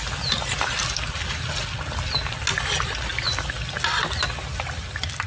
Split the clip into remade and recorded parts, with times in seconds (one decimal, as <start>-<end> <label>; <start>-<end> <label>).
0.0-5.3 recorded